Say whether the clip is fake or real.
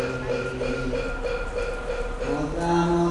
real